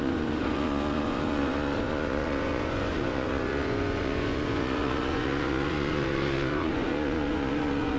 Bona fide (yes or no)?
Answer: no